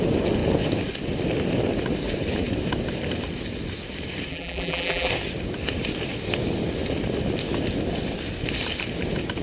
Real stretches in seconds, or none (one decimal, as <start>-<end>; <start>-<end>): 0.0-4.3; 5.1-9.4

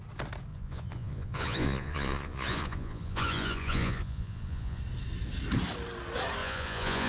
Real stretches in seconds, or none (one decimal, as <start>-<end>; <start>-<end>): 0.0-0.5; 4.8-6.4

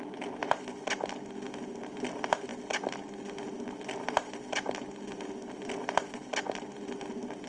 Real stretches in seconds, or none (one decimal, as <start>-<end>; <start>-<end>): 0.0-7.5

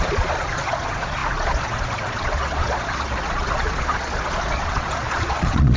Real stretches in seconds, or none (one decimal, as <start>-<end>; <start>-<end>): none

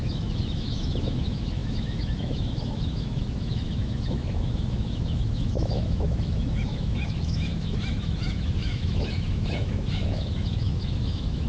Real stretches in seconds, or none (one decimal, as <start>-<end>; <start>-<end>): none